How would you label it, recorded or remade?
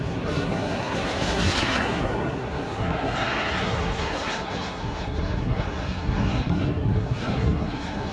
remade